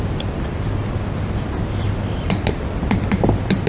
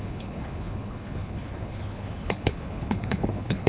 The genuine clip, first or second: first